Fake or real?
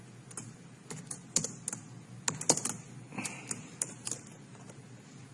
real